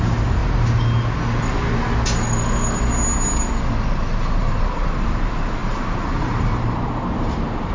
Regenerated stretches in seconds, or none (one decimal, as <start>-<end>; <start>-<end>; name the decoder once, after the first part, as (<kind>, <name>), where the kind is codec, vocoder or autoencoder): 0.0-0.4 (vocoder, BigVGAN v2); 4.4-7.7